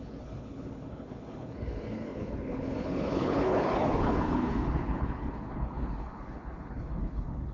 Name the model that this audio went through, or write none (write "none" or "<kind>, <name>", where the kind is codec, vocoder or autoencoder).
codec, HILCodec